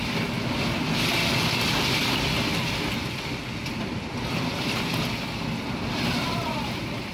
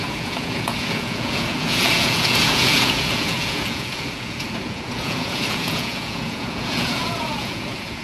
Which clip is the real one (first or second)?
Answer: first